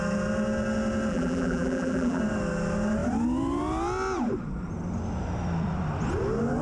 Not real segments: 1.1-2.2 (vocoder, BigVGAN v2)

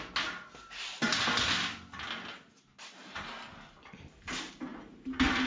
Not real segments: 4.7-5.5 (vocoder, BigVGAN v2)

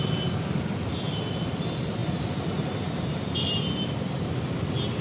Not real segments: none

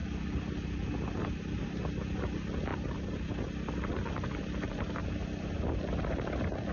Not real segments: none

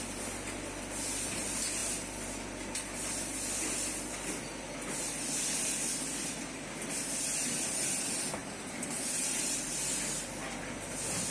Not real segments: 8.4-9.9 (vocoder, BigVGAN v2)

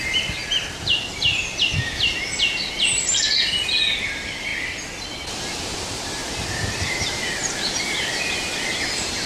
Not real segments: 0.0-0.4 (vocoder, BigVGAN v2); 4.0-4.5; 5.5-6.2; 6.8-9.3

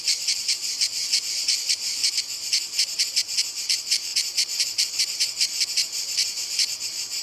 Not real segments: 0.0-2.0 (vocoder, BigVGAN v2); 3.1-7.2